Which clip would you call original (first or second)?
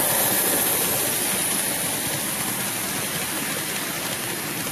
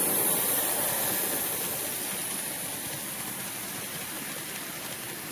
first